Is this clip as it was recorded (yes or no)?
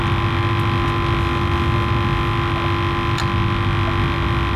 yes